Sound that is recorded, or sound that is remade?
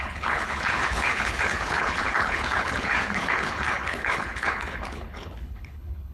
remade